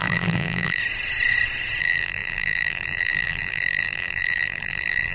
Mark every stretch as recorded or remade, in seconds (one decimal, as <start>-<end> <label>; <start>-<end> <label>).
0.0-0.8 remade; 0.8-1.8 recorded; 1.8-5.1 remade